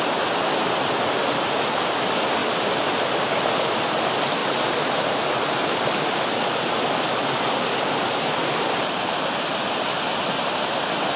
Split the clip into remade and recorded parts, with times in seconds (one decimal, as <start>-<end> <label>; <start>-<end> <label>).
0.0-11.2 recorded